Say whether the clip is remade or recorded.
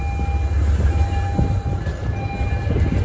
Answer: recorded